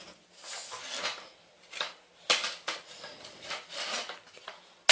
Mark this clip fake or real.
real